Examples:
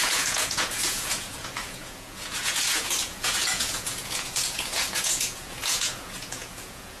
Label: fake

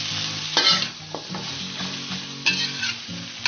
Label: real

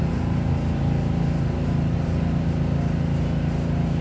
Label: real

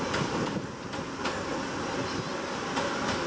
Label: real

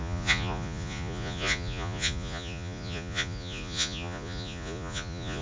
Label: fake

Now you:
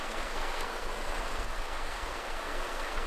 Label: fake